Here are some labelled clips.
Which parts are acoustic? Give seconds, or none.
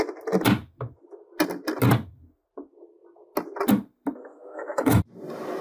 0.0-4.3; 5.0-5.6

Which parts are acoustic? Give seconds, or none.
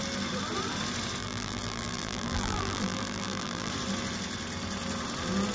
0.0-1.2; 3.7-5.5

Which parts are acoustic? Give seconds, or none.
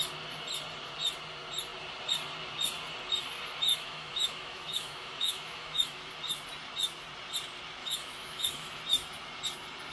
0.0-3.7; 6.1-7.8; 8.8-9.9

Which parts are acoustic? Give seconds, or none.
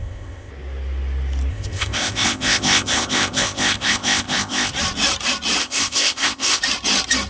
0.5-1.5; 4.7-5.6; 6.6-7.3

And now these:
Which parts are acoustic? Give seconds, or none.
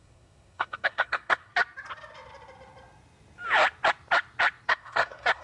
1.5-4.7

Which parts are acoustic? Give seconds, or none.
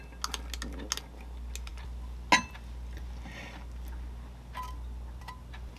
0.0-5.8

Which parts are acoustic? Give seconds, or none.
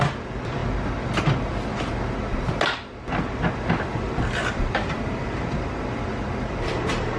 0.0-7.2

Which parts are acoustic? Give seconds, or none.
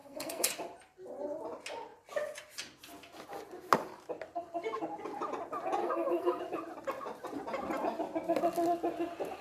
0.5-5.8; 6.4-9.4